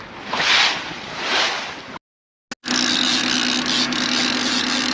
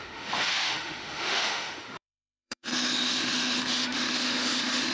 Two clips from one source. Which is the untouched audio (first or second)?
first